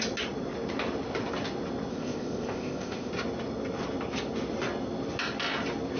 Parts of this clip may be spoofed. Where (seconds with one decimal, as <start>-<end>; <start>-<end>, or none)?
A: 1.9-3.1